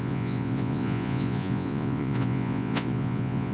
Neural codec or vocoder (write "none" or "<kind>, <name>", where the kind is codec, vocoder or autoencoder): vocoder, Vocos